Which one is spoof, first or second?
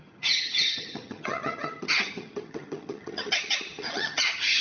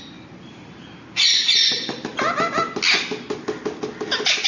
first